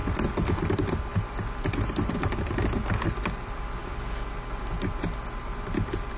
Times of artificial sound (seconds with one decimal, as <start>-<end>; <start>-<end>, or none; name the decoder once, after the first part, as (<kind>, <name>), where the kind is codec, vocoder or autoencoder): none